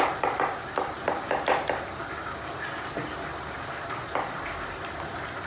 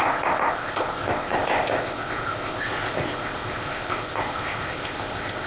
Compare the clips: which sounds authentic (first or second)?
first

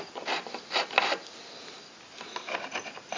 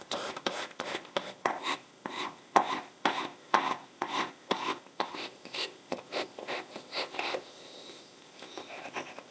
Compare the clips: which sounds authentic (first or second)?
first